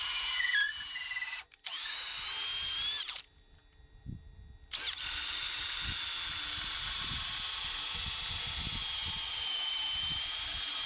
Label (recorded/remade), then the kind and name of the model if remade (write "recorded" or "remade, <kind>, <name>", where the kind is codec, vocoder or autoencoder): recorded